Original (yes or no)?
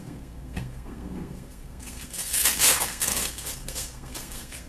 no